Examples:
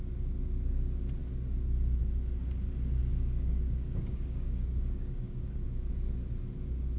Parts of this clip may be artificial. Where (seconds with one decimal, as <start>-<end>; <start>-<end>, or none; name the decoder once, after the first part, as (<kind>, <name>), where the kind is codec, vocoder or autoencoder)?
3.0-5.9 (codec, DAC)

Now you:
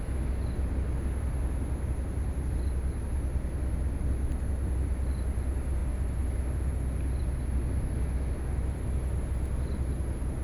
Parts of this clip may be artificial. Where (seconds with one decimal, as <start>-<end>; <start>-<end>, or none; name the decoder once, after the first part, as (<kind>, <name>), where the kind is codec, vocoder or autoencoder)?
none

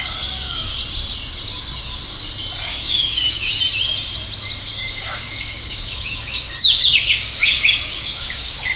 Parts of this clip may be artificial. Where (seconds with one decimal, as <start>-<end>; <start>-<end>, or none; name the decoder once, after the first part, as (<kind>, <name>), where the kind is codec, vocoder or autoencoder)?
0.0-0.7 (codec, DAC); 2.7-3.5; 4.6-8.8